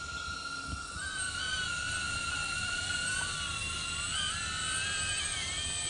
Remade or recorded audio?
remade